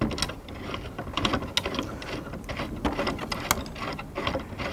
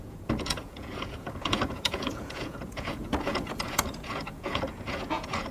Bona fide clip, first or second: first